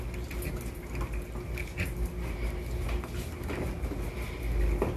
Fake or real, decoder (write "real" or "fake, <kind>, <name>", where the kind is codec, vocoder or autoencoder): real